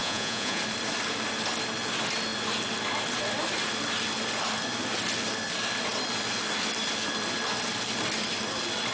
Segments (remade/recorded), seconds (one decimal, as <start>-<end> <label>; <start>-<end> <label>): 0.0-0.6 remade; 0.6-8.9 recorded